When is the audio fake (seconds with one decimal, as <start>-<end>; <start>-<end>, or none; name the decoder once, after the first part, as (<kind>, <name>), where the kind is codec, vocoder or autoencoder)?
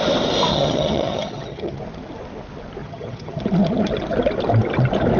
0.5-1.8 (vocoder, HiFi-GAN); 2.8-3.4